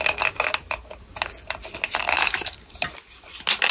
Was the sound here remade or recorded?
recorded